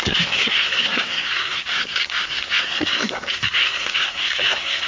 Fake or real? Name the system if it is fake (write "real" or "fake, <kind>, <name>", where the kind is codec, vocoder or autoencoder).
fake, codec, SNAC